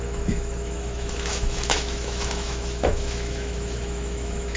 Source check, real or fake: fake